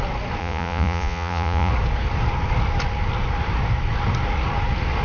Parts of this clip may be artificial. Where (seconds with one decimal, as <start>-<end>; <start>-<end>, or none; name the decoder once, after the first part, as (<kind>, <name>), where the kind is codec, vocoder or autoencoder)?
0.4-1.7 (vocoder, Vocos)